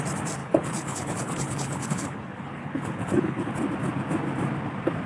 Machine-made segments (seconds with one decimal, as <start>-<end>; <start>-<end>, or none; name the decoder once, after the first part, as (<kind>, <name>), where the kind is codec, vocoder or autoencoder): 0.4-3.5 (codec, HILCodec)